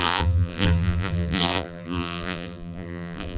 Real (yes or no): no